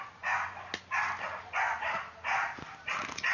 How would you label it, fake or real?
real